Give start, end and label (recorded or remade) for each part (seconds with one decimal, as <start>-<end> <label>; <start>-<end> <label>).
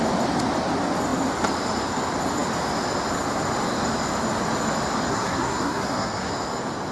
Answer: 0.0-5.1 recorded; 5.1-6.3 remade; 6.3-6.9 recorded